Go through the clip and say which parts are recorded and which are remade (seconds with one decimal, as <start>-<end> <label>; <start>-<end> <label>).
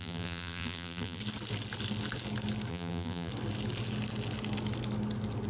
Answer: 0.0-1.2 remade; 1.2-2.7 recorded; 2.7-3.3 remade; 3.3-5.5 recorded